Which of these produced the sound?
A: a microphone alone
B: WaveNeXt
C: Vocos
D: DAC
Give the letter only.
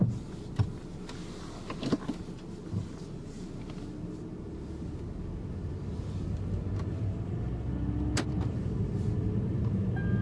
A